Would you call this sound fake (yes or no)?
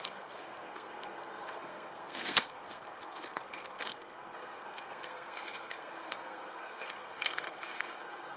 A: yes